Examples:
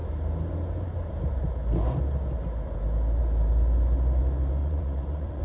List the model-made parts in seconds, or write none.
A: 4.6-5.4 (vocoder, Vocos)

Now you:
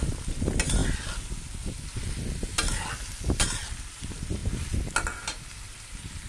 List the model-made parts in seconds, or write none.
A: none